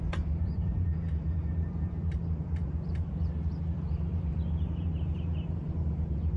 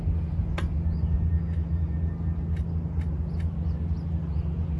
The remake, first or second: first